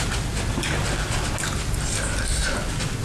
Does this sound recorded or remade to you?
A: recorded